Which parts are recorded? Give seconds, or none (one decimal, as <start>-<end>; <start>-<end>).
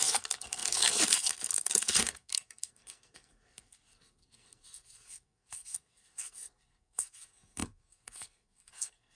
none